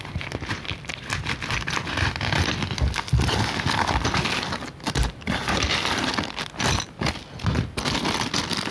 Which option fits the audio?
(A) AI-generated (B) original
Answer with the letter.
B